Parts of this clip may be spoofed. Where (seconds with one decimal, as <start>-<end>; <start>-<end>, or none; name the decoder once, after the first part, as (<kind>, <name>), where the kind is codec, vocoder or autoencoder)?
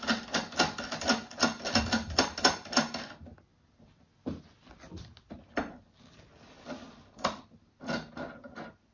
none